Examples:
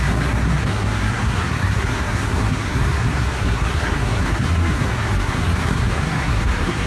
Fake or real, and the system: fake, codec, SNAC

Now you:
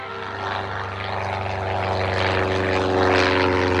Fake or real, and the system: real